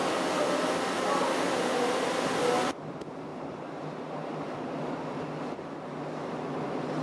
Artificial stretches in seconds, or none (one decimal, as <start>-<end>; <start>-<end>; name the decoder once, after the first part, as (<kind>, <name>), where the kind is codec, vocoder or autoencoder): 3.3-4.8 (vocoder, BigVGAN v2)